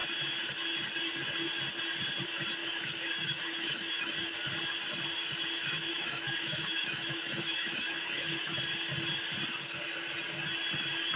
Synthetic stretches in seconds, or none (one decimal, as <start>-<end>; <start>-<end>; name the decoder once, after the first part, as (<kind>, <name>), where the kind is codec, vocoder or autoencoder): 2.6-4.1 (autoencoder, DAC-VAE); 5.9-8.6